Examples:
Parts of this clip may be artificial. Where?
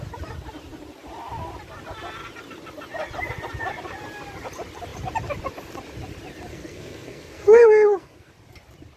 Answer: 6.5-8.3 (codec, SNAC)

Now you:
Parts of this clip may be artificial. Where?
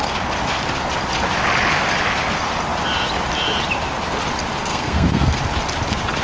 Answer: 4.7-5.4 (codec, SNAC)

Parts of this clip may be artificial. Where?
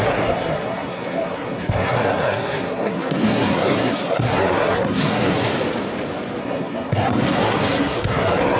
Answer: 0.0-5.5 (codec, SNAC); 6.4-8.6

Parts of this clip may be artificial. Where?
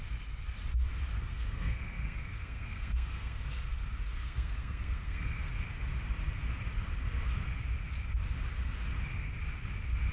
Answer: 1.3-3.4 (codec, SNAC); 4.1-5.5